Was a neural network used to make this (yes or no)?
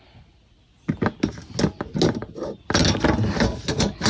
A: no